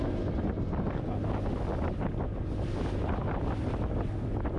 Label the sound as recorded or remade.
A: recorded